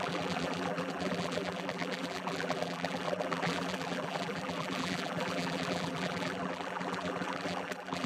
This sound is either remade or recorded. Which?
remade